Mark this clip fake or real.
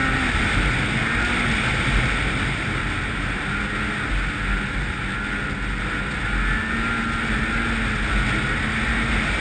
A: real